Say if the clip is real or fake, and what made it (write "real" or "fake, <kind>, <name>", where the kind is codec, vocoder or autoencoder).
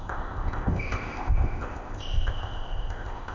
fake, codec, ZipCodec